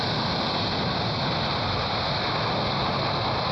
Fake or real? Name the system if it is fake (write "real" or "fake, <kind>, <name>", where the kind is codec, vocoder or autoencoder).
real